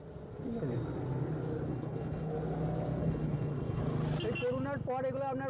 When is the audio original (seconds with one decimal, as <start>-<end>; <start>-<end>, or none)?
0.0-1.7; 2.3-3.0; 3.8-5.5